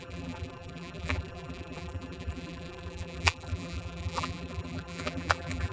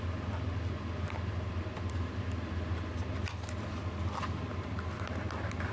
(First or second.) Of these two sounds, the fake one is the first